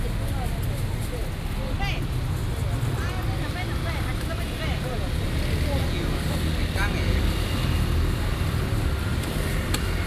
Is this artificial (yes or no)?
no